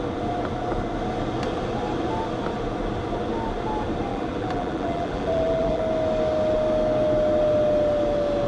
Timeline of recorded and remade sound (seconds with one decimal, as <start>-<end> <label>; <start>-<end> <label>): 0.0-4.1 recorded; 4.1-5.8 remade; 5.8-8.5 recorded